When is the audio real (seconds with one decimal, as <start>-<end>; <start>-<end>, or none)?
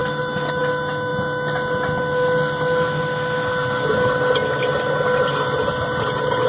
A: 0.0-6.5